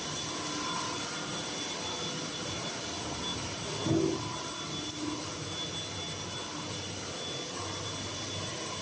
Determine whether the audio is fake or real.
real